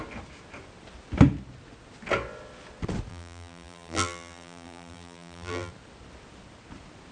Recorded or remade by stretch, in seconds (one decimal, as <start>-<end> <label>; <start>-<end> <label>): 0.0-3.1 recorded; 3.1-5.7 remade; 5.7-7.1 recorded